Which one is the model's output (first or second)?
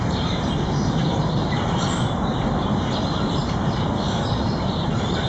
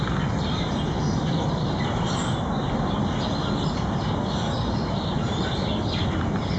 first